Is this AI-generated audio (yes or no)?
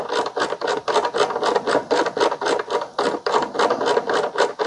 no